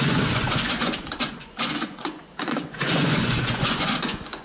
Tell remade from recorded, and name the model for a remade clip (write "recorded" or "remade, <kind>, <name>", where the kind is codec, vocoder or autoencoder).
remade, vocoder, Vocos